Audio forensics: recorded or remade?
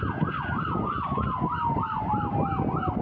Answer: recorded